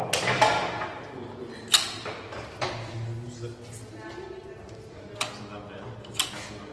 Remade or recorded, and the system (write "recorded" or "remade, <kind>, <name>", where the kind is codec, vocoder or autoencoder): recorded